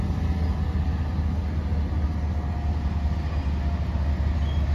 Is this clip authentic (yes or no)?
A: yes